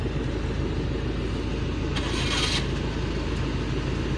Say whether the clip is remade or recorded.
recorded